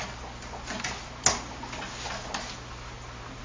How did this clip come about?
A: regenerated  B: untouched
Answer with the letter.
B